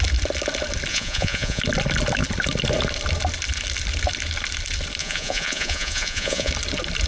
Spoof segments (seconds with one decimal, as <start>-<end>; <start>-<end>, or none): 0.9-1.6; 5.0-6.5

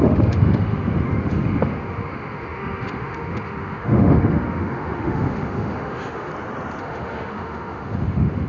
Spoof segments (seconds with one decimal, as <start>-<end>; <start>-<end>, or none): 0.0-6.3; 6.8-8.5

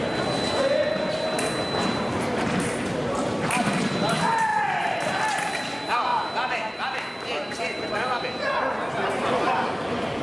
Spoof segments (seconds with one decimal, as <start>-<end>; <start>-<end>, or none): 4.5-5.5; 6.1-8.2

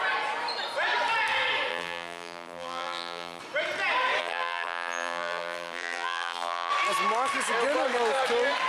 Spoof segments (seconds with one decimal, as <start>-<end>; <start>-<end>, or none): 1.7-3.4; 4.2-6.7